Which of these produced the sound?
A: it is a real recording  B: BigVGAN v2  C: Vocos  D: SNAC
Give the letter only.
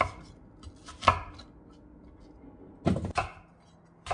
A